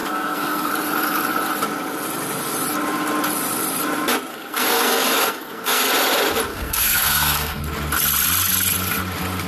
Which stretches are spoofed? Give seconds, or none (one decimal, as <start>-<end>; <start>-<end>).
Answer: 0.0-0.7; 4.3-5.9; 6.5-7.6

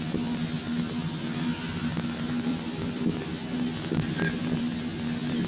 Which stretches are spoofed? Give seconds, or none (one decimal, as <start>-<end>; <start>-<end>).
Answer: 2.5-3.3

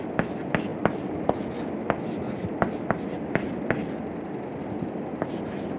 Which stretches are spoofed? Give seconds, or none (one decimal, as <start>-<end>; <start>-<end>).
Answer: none

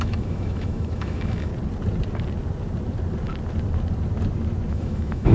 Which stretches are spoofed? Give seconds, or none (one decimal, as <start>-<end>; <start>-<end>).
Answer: 0.0-1.5; 4.7-5.3